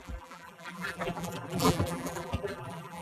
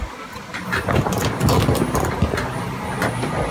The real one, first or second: second